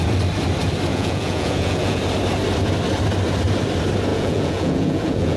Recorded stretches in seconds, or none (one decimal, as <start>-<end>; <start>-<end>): 0.0-0.9; 2.0-4.1